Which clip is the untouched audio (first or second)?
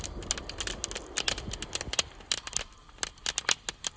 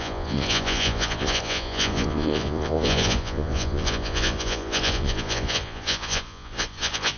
first